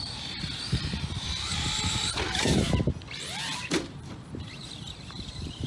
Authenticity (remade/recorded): remade